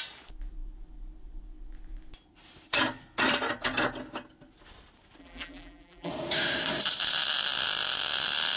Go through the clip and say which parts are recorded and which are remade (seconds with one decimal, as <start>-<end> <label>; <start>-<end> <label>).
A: 0.0-5.2 recorded; 5.2-6.1 remade; 6.1-8.6 recorded